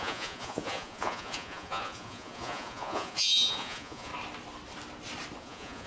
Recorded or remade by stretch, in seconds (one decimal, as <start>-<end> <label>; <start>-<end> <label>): 0.0-4.1 remade; 4.1-5.4 recorded; 5.4-5.9 remade